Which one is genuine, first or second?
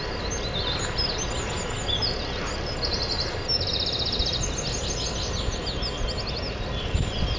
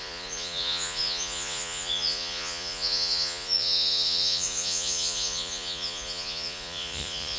first